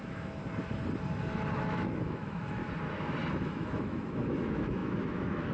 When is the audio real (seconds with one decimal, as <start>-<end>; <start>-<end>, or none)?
0.4-1.5; 2.6-3.3